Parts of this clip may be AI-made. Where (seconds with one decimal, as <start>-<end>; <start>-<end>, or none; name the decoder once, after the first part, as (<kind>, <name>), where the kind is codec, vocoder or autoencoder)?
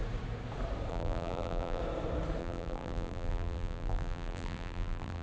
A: 0.9-1.8 (vocoder, BigVGAN v2); 2.4-5.2